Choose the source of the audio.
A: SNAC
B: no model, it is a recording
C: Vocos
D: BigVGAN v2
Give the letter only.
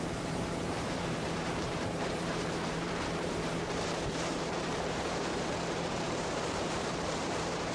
D